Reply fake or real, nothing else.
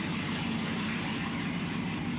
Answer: fake